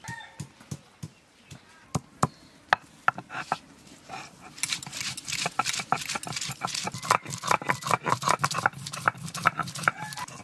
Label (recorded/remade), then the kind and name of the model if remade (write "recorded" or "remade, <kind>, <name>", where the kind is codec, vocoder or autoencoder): recorded